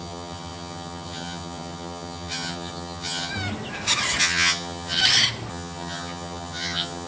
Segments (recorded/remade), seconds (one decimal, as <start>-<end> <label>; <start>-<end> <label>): 0.0-3.3 remade; 3.3-4.2 recorded; 4.2-5.0 remade; 5.0-5.5 recorded; 5.5-7.1 remade